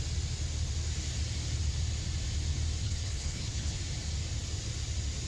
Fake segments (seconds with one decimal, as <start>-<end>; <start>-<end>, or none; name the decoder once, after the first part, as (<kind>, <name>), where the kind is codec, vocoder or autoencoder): 2.8-3.8 (codec, HILCodec)